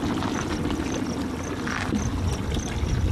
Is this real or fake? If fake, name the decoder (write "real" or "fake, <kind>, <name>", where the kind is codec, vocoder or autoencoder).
real